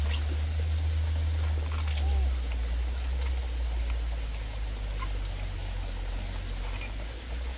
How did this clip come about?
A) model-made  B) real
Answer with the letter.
B